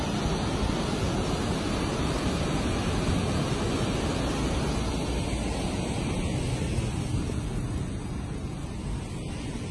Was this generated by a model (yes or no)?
no